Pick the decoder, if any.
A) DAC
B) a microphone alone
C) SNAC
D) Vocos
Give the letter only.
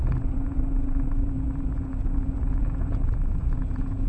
D